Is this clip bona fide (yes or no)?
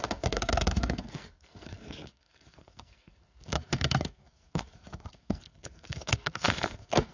no